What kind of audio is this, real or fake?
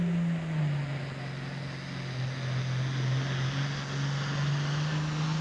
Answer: real